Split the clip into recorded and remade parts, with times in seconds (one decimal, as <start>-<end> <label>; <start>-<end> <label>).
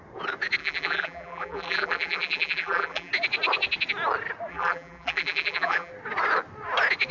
0.0-0.6 recorded; 0.6-3.1 remade; 3.1-4.5 recorded; 4.5-5.9 remade; 5.9-7.1 recorded